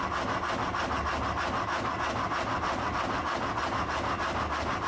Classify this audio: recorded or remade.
recorded